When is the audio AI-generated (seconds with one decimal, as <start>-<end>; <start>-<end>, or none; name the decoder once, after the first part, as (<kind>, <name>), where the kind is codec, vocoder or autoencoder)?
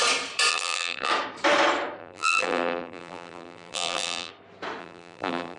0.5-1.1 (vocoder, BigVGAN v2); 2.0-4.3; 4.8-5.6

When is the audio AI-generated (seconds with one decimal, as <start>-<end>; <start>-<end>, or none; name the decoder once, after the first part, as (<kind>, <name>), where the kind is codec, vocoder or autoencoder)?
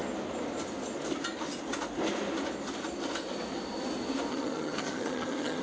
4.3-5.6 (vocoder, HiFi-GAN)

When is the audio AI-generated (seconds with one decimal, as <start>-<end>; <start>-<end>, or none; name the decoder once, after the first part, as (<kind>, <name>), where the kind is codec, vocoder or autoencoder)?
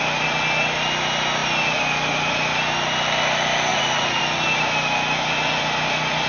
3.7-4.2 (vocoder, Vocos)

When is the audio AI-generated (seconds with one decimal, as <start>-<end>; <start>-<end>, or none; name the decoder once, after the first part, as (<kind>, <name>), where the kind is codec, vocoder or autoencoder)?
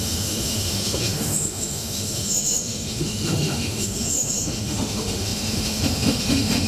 0.0-6.7 (autoencoder, DAC-VAE)